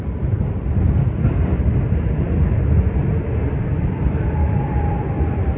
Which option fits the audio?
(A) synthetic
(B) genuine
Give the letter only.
A